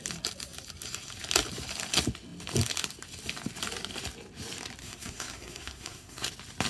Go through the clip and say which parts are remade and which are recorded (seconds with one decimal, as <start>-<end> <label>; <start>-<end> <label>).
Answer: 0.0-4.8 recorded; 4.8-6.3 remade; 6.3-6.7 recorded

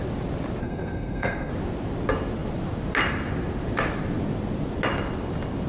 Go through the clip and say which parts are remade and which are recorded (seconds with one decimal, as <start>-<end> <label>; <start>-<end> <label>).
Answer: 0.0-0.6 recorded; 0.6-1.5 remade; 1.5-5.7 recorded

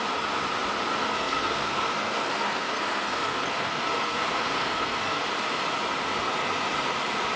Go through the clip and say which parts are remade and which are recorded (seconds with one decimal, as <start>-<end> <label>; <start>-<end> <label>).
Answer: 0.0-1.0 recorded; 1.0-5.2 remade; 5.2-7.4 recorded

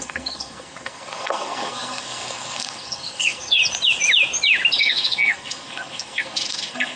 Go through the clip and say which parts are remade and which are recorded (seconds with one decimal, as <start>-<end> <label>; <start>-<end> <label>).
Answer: 0.0-3.6 remade; 3.6-4.8 recorded; 4.8-7.0 remade